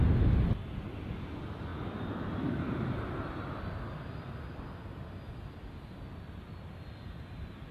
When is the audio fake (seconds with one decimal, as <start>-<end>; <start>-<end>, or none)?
none